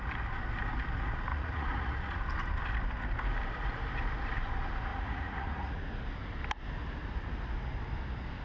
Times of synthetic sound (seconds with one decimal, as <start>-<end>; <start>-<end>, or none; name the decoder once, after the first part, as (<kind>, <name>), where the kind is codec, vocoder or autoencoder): 1.3-2.2 (vocoder, Vocos); 4.9-5.8